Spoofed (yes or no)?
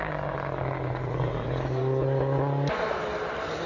no